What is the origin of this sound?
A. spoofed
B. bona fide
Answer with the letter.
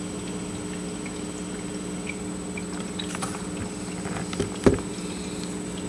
B